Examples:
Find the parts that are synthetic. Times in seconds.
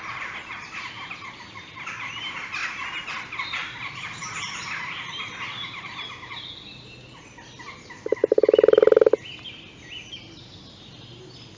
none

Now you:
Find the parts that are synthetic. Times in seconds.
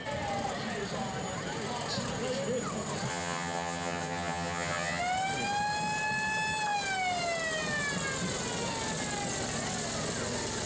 3.1-5.0 (vocoder, HiFi-GAN)